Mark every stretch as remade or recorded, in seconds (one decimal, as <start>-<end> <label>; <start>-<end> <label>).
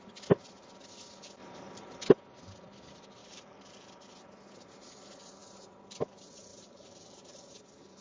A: 0.0-1.4 recorded; 1.4-2.1 remade; 2.1-3.2 recorded; 3.2-3.9 remade; 3.9-5.4 recorded; 5.4-6.1 remade; 6.1-6.5 recorded; 6.5-7.4 remade; 7.4-8.0 recorded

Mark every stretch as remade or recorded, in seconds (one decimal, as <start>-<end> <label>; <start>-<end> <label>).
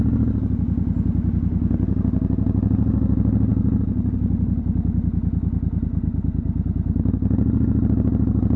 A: 0.0-8.6 recorded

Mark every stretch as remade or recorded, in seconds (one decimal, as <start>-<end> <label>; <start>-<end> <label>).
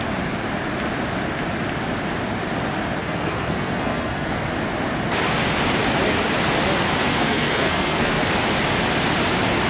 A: 0.0-3.0 recorded; 3.0-4.5 remade; 4.5-7.1 recorded; 7.1-8.3 remade; 8.3-9.7 recorded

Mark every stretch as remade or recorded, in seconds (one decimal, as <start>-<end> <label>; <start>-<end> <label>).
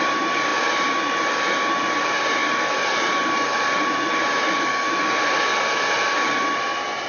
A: 0.0-7.1 recorded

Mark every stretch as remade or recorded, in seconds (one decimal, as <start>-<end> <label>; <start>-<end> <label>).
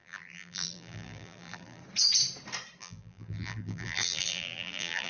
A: 0.0-1.8 remade; 1.8-2.8 recorded; 2.8-5.1 remade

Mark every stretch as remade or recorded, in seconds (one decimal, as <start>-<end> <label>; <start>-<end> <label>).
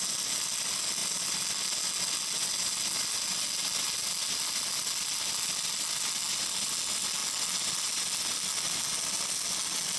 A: 0.0-10.0 recorded